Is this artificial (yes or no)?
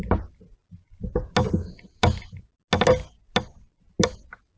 no